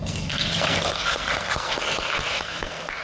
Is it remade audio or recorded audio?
remade